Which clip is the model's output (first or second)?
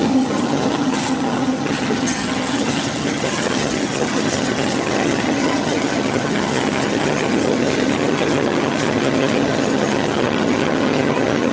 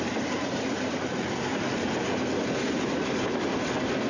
first